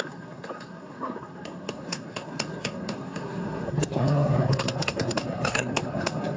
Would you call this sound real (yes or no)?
no